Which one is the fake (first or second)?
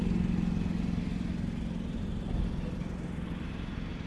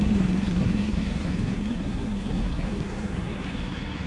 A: second